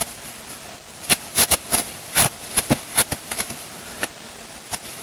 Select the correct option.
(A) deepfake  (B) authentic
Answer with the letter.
B